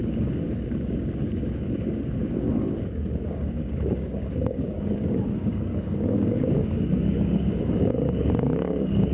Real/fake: fake